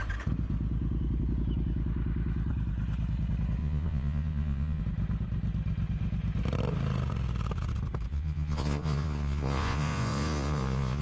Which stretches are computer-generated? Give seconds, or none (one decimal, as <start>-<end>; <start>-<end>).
3.6-4.8; 8.1-11.0